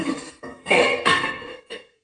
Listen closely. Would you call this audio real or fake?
fake